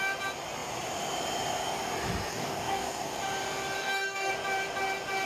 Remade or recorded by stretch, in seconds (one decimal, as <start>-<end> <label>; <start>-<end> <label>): 0.0-2.3 recorded; 2.3-3.2 remade; 3.2-3.8 recorded; 3.8-4.3 remade; 4.3-5.3 recorded